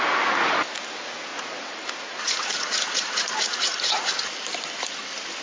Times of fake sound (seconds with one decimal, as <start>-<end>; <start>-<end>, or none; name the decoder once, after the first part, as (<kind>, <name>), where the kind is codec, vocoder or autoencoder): 1.3-4.1 (vocoder, Vocos)